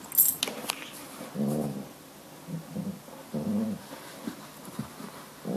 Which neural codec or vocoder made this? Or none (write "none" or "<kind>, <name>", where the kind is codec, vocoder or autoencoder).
none